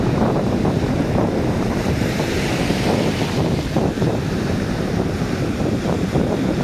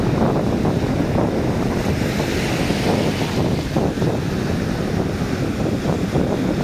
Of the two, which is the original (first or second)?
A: second